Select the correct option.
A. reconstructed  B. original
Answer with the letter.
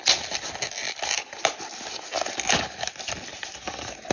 B